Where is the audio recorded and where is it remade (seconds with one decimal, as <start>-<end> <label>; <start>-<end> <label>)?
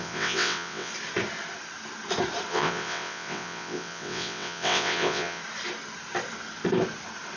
0.0-0.9 remade; 0.9-2.5 recorded; 2.5-5.4 remade; 5.4-7.4 recorded